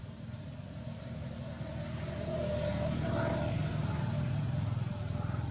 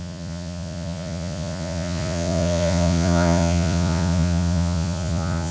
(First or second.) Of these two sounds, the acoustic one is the first